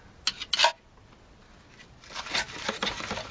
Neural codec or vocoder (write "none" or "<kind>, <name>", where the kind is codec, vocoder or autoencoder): none